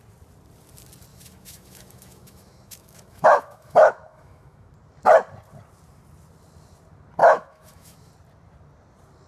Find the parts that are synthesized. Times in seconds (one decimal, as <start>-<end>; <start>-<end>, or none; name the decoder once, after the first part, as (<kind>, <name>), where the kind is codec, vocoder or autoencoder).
1.1-4.7 (autoencoder, DAC-VAE); 7.2-8.1